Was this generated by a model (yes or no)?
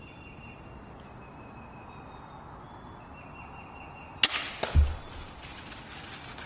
no